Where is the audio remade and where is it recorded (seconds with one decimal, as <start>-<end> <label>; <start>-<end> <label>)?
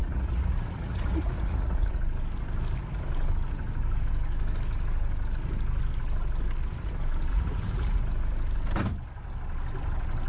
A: 0.0-2.0 remade; 2.0-7.3 recorded; 7.3-8.0 remade; 8.0-10.3 recorded